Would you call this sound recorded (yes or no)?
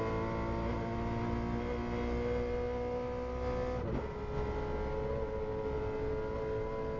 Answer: yes